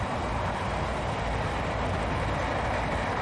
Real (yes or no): yes